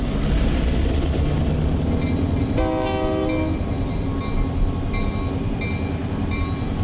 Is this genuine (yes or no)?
yes